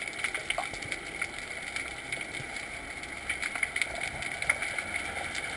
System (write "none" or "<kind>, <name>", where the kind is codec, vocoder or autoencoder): none